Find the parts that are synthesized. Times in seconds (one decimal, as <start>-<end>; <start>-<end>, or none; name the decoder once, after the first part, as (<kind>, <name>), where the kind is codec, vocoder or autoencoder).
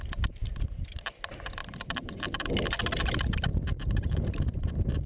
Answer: 0.4-0.9 (vocoder, BigVGAN v2); 1.6-2.5; 3.5-5.1